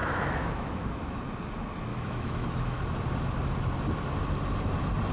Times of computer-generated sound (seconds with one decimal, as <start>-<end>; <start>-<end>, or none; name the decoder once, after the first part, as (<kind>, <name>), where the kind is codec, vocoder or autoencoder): 0.0-1.2 (autoencoder, DAC-VAE); 1.9-2.8